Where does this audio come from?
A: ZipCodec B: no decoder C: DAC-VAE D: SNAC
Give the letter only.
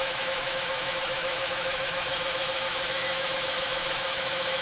C